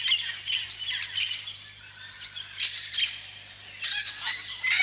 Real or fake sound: real